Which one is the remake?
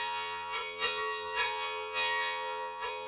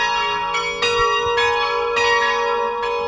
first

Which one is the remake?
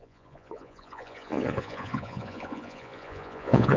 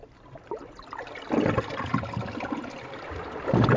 first